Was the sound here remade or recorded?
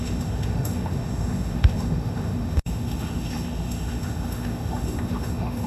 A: remade